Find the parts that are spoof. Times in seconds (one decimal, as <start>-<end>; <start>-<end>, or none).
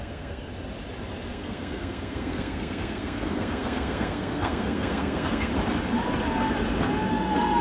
0.0-0.5; 1.3-5.5; 7.1-7.6